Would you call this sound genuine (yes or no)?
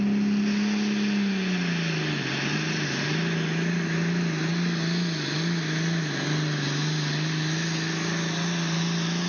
yes